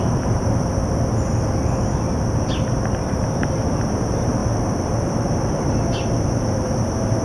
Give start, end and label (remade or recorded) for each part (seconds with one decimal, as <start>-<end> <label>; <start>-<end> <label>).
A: 0.0-0.8 remade; 0.8-3.1 recorded; 3.1-4.4 remade; 4.4-5.5 recorded; 5.5-7.2 remade

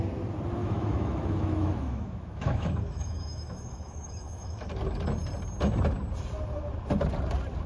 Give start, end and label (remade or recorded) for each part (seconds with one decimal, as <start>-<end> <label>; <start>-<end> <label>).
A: 0.0-0.6 recorded; 0.6-4.7 remade; 4.7-7.7 recorded

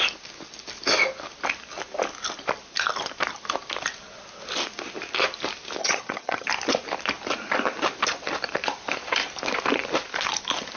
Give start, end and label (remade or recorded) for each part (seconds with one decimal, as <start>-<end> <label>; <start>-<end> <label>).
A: 0.0-5.8 recorded; 5.8-6.5 remade; 6.5-10.8 recorded